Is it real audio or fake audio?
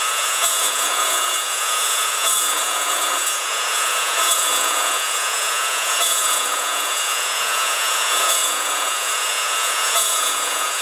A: fake